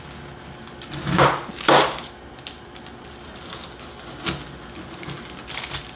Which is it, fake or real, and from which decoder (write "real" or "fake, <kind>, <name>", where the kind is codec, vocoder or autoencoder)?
real